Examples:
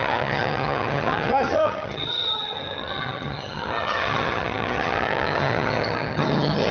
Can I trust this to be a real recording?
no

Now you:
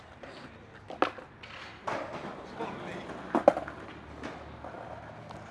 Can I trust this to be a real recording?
yes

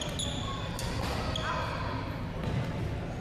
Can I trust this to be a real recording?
yes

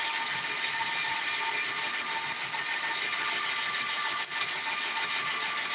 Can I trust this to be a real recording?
yes